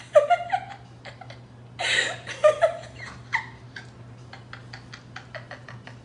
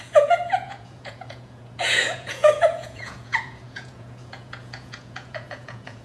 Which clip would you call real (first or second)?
first